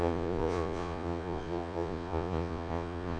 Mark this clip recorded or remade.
remade